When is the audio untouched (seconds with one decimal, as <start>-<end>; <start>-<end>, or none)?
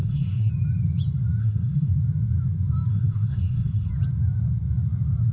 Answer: 0.5-1.4; 1.9-2.9; 3.9-5.3